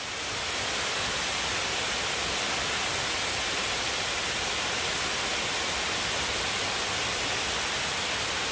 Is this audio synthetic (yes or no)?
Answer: no